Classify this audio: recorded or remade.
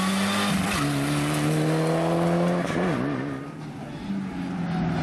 recorded